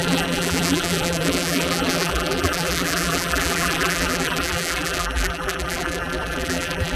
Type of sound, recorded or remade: remade